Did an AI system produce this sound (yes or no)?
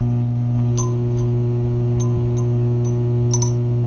no